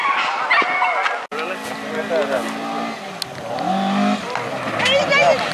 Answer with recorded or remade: recorded